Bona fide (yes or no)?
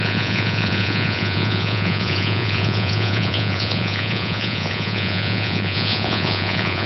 no